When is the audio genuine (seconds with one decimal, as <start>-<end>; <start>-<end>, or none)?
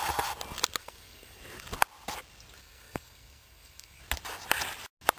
0.0-0.8; 1.4-2.6; 4.0-5.2